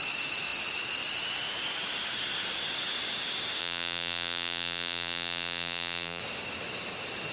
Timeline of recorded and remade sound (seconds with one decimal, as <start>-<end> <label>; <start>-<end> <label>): 0.0-3.6 recorded; 3.6-6.2 remade; 6.2-7.3 recorded